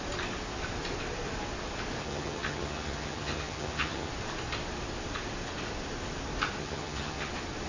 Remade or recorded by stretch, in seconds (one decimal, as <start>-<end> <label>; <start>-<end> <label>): 0.0-2.0 recorded; 2.0-4.1 remade; 4.1-6.6 recorded; 6.6-7.3 remade; 7.3-7.7 recorded